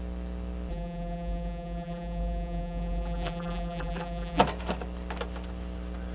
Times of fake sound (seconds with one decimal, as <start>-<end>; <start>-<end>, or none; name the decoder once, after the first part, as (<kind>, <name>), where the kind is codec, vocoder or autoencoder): 0.7-4.4 (vocoder, BigVGAN v2)

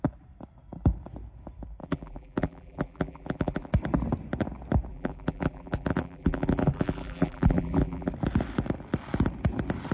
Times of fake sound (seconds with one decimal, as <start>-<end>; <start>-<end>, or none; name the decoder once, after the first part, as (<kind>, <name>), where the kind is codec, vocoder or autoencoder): 1.8-3.7 (vocoder, BigVGAN v2); 4.9-8.1

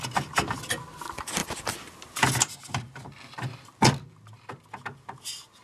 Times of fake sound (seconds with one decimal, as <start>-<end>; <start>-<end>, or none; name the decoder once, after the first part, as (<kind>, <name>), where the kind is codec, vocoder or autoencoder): 1.4-4.5 (vocoder, BigVGAN v2)

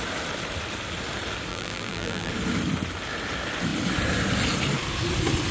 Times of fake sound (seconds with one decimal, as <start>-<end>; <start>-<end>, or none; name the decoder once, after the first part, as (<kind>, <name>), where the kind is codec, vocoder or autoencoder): 1.5-2.3 (vocoder, BigVGAN v2)

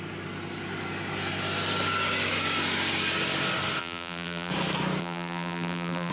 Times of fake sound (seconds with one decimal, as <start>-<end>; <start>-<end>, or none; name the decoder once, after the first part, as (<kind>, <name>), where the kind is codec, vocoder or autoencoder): 3.8-4.5 (vocoder, BigVGAN v2); 5.0-6.1

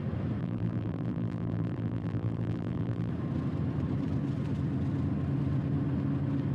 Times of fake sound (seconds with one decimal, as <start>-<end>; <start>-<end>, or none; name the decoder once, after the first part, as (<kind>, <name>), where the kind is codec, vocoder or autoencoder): 0.4-3.1 (vocoder, BigVGAN v2)